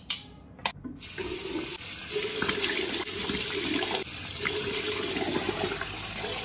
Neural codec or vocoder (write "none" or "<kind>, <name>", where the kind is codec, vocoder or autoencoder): none